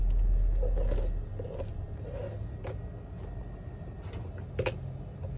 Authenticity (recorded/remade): recorded